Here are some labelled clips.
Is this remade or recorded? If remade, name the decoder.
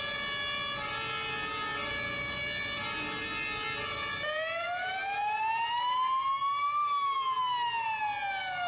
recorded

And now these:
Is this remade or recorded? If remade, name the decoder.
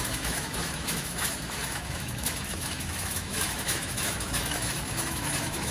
remade, autoencoder, DAC-VAE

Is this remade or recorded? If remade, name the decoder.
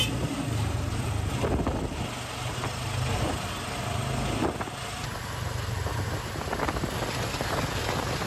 recorded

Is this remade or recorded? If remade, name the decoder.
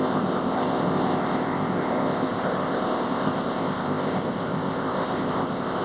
remade, codec, ZipCodec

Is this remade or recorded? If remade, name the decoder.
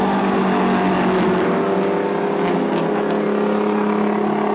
recorded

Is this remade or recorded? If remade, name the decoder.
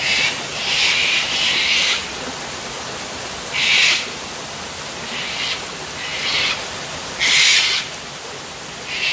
recorded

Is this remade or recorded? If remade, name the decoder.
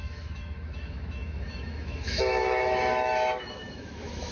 remade, autoencoder, DAC-VAE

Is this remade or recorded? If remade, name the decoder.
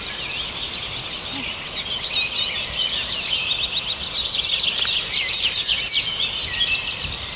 recorded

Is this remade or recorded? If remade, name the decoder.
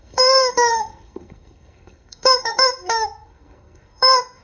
remade, codec, SNAC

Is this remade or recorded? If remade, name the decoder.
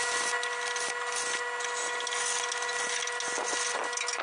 recorded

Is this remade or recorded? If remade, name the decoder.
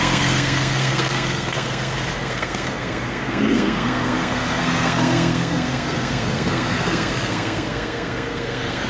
remade, codec, SNAC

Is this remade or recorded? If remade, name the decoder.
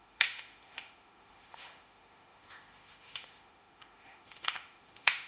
remade, autoencoder, DAC-VAE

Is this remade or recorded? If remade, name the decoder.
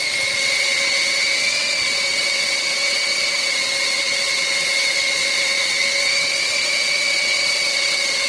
remade, vocoder, WaveNeXt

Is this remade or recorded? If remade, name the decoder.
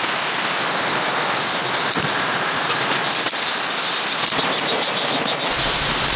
recorded